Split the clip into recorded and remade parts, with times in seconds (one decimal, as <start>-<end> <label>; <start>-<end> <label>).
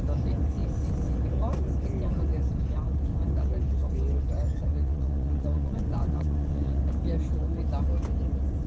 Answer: 0.0-4.7 recorded; 4.7-6.8 remade; 6.8-8.7 recorded